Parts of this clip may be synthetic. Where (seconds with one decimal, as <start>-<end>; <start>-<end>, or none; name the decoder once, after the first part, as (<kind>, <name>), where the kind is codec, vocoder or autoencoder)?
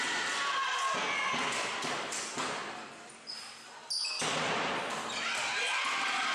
none